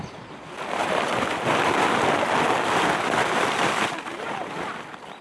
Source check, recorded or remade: remade